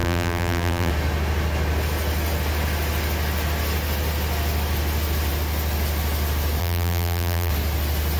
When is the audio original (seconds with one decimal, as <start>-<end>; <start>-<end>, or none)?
0.9-6.6; 7.5-8.2